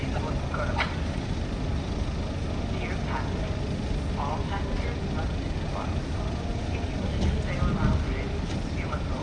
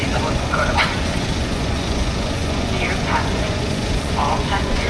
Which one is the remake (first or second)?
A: second